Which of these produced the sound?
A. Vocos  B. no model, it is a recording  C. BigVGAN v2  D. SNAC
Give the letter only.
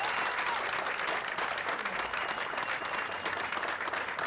B